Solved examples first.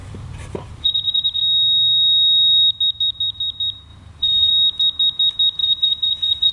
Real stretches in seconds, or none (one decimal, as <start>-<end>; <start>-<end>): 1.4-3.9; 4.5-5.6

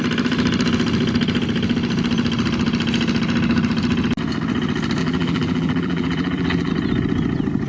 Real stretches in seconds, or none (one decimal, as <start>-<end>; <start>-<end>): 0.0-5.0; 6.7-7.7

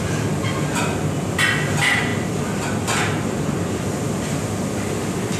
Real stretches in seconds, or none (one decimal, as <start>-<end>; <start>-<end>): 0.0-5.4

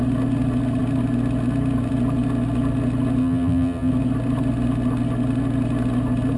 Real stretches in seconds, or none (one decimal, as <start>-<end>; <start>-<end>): 0.0-3.2; 3.9-6.4

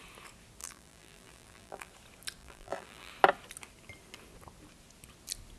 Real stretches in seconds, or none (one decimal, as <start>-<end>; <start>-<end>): 0.0-0.6; 1.9-2.4; 3.1-5.6

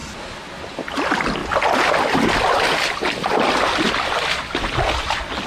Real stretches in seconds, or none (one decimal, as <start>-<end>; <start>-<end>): 0.5-1.4; 4.7-5.5